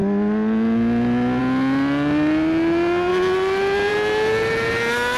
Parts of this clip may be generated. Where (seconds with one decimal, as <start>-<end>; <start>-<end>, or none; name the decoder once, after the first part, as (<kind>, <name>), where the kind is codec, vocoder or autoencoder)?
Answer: none